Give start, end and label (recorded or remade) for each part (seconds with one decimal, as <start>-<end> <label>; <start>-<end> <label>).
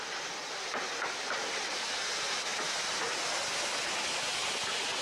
0.0-5.0 recorded